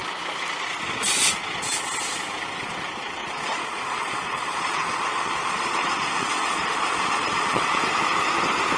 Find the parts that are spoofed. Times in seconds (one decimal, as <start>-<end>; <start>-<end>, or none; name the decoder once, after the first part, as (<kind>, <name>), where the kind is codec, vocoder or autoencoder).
3.2-7.8 (vocoder, Vocos)